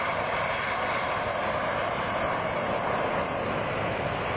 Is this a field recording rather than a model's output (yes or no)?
yes